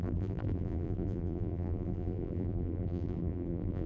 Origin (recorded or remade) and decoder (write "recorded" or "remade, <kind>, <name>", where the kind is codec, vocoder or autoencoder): remade, vocoder, BigVGAN v2